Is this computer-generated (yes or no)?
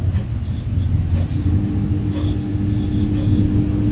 no